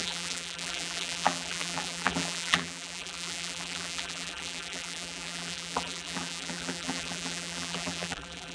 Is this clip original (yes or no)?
no